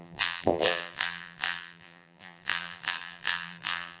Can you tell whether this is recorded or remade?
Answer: remade